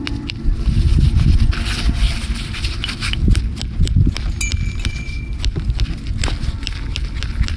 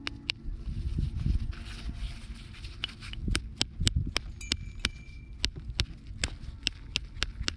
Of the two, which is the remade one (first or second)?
first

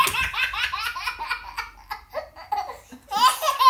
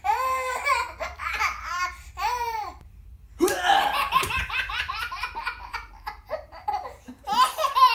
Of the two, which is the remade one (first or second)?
second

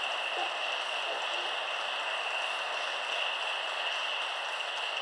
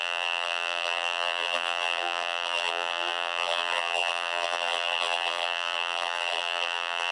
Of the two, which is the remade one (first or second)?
second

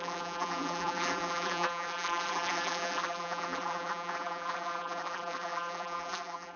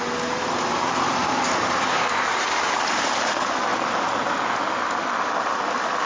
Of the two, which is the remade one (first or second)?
first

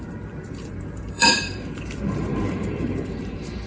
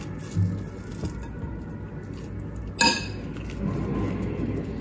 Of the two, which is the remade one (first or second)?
first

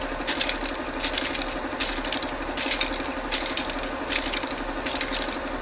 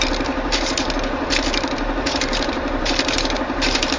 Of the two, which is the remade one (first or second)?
second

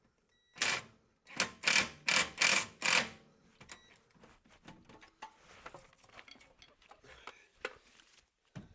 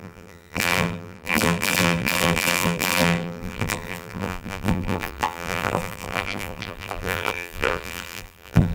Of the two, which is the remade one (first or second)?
second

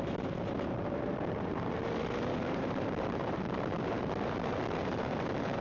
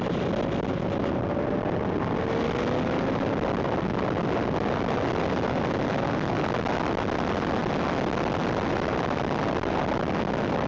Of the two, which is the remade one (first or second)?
first